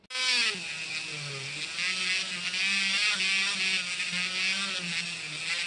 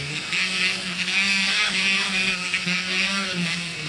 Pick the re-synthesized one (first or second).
second